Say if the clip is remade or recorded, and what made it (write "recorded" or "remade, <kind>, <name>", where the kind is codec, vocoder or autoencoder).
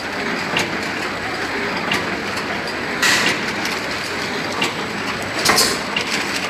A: recorded